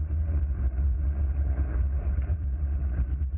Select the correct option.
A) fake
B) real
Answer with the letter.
A